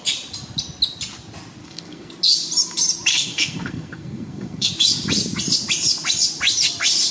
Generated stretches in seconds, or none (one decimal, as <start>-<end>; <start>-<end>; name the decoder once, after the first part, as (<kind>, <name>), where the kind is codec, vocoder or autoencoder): 1.6-2.1 (codec, SNAC); 3.1-4.7